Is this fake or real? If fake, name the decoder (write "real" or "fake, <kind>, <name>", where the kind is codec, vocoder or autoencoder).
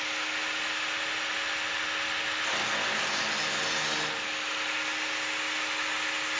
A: real